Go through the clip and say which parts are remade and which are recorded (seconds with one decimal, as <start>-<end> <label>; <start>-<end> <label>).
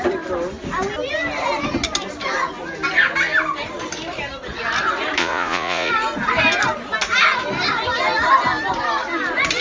0.0-5.2 recorded; 5.2-5.9 remade; 5.9-9.6 recorded